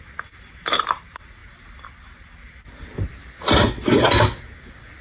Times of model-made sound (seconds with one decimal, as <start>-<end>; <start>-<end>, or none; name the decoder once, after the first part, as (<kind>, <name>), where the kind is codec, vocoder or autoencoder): none

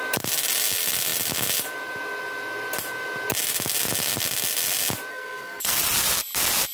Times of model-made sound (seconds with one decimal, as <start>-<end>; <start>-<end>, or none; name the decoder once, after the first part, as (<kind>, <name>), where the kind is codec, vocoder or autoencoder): 5.1-5.8 (codec, SNAC)

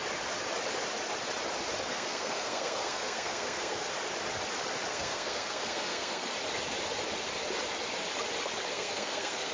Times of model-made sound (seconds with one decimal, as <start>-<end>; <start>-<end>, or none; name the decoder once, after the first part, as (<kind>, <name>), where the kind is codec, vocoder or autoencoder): 1.9-3.9 (codec, SNAC); 4.9-6.3; 8.7-9.5

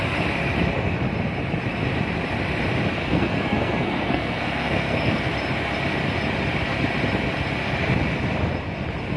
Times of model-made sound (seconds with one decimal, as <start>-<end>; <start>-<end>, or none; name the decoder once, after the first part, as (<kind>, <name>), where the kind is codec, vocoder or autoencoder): 3.0-5.2 (codec, SNAC)

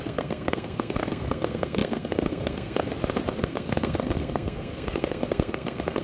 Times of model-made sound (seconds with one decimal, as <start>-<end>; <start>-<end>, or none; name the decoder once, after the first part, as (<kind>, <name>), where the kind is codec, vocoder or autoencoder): 0.0-2.9 (codec, SNAC); 3.4-6.0

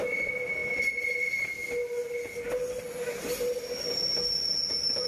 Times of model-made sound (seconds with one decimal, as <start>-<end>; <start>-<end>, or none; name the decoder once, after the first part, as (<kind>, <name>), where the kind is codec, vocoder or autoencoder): none